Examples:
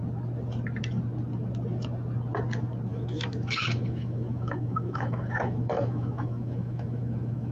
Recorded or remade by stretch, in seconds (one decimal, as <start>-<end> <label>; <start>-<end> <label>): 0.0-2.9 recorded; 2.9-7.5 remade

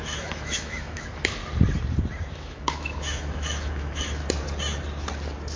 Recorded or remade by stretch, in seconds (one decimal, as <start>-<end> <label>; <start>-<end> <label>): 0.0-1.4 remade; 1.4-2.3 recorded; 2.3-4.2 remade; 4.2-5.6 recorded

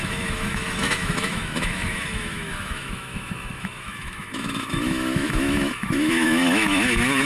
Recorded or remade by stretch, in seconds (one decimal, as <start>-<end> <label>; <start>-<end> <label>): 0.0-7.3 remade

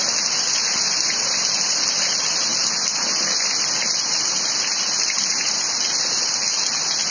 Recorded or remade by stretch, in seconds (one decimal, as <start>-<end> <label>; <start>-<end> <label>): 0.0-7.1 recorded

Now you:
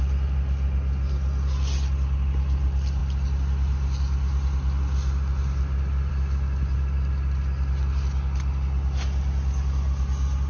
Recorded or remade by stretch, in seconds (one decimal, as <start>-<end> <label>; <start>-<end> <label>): 0.0-10.5 recorded

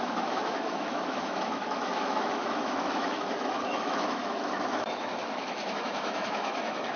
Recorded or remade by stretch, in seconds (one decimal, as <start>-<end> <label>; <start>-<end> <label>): 0.0-7.0 remade

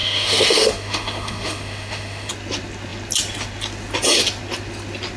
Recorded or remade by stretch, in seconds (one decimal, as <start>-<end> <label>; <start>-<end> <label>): 0.0-2.3 remade; 2.3-5.2 recorded

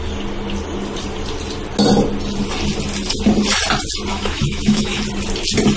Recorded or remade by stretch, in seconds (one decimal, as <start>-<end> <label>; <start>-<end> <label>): 0.0-4.1 recorded; 4.1-5.0 remade; 5.0-5.8 recorded